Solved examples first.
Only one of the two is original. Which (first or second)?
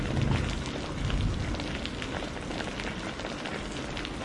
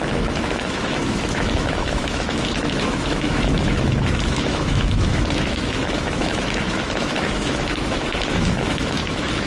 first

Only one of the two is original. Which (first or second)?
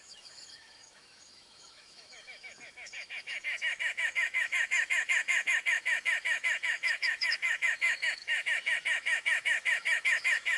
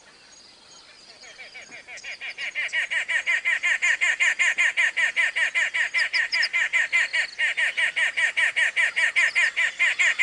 second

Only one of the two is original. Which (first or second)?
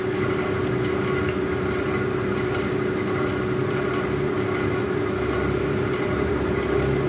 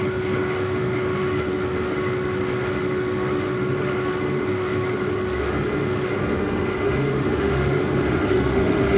first